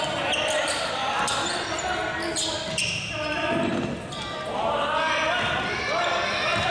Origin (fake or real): real